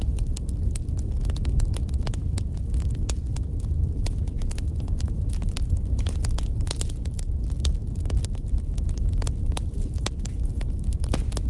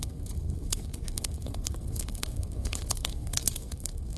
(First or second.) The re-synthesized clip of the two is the second